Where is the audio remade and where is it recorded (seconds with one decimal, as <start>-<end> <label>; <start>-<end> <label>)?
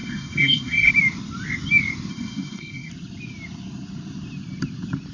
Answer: 0.0-0.9 remade; 0.9-2.1 recorded; 2.1-2.9 remade; 2.9-5.1 recorded